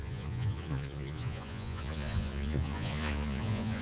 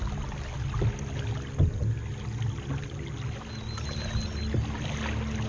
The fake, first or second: first